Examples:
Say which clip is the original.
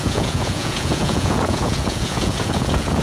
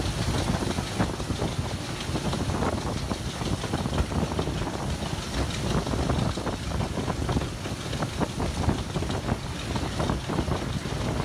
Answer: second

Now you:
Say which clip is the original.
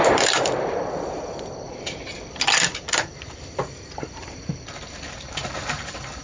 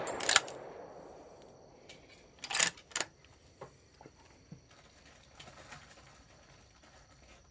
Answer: second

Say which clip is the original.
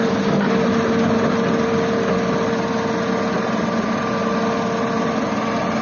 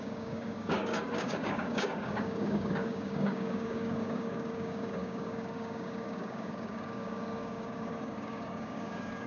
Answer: first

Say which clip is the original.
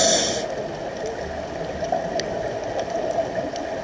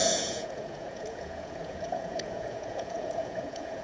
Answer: first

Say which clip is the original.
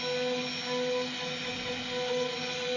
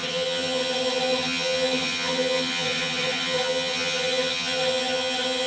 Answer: first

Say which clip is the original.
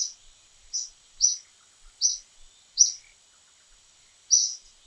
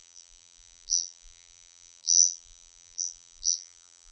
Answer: first